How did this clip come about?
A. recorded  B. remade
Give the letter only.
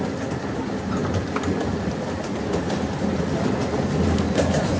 A